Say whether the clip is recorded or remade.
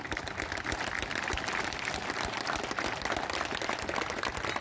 recorded